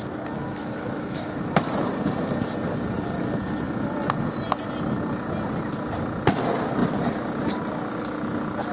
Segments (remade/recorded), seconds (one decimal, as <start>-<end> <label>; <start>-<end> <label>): 0.0-0.6 recorded; 0.6-1.4 remade; 1.4-8.7 recorded